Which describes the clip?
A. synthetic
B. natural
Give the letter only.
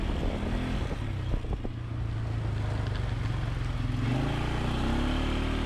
B